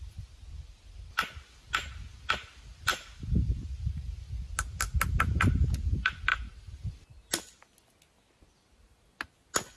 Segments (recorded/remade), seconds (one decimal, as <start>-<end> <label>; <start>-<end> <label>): 0.0-6.3 recorded; 6.3-6.9 remade; 6.9-9.8 recorded